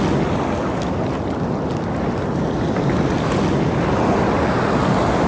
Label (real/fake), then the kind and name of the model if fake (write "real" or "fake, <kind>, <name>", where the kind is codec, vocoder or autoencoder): real